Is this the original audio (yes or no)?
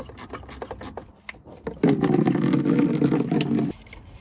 yes